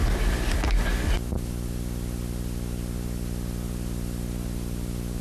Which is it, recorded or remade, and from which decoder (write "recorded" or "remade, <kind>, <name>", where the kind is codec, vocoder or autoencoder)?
recorded